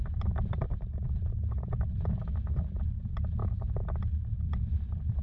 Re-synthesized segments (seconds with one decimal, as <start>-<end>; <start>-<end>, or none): none